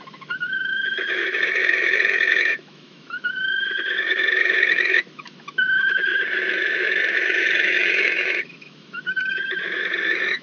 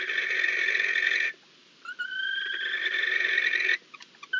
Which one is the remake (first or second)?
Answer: first